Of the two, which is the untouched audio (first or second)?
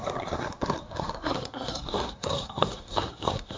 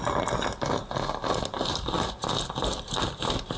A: second